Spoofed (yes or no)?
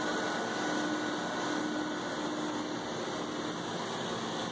no